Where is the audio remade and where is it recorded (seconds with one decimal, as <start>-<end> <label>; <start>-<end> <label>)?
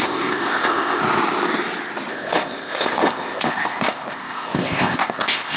0.0-1.0 remade; 1.0-2.1 recorded; 2.1-5.6 remade